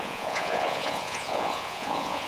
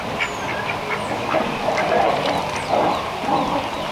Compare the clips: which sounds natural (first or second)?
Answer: second